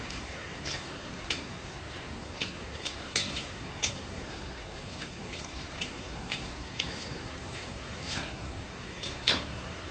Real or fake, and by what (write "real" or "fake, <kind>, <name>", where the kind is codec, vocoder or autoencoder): fake, codec, SNAC